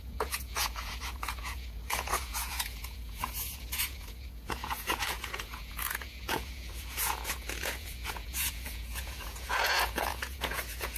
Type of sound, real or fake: fake